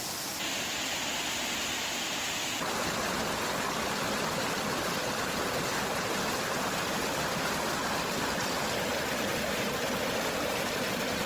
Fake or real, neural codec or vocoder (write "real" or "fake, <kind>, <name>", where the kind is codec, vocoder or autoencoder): real